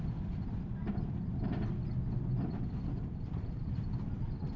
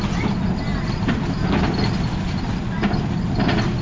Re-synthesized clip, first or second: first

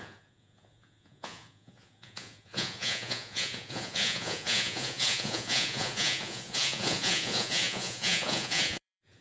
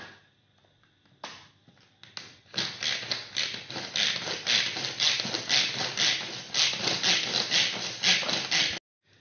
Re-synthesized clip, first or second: first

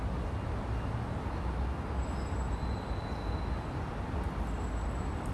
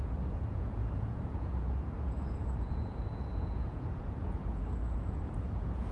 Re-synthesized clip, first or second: second